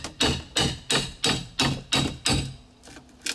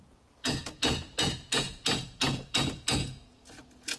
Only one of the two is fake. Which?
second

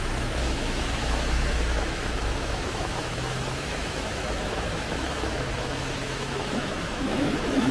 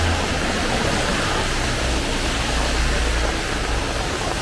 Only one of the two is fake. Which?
first